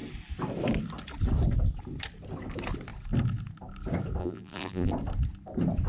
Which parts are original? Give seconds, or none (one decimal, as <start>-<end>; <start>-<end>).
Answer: 0.0-4.2; 4.9-5.9